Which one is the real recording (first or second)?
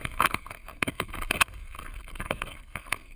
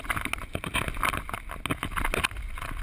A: second